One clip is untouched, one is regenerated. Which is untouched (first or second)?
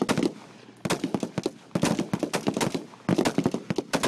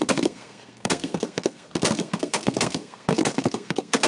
first